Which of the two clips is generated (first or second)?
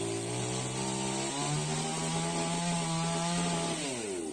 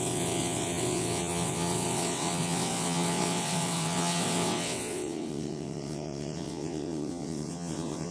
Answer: second